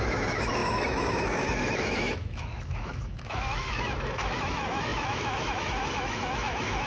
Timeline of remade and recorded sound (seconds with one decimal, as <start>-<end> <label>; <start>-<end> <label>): 0.0-6.9 remade